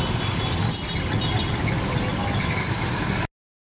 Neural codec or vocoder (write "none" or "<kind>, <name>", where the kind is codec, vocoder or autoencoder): none